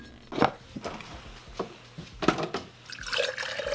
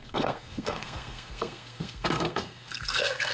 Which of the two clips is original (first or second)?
first